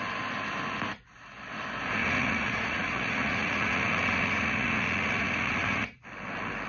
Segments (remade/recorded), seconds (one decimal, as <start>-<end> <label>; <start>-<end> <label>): 0.0-2.0 recorded; 2.0-6.0 remade; 6.0-6.7 recorded